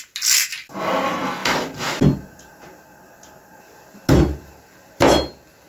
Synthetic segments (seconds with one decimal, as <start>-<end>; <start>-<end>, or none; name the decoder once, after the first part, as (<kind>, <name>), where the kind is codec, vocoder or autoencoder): none